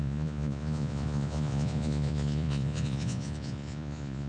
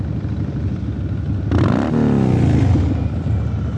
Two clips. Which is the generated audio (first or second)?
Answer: first